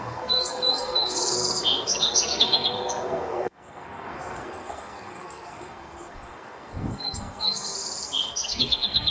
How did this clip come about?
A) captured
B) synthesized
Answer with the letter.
B